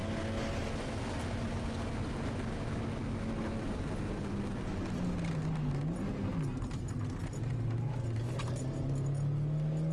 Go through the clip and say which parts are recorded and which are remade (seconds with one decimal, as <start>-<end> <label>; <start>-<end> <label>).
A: 0.0-9.9 recorded